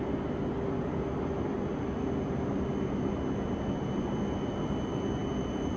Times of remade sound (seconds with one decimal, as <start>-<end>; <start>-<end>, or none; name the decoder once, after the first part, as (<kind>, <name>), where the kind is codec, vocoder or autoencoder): none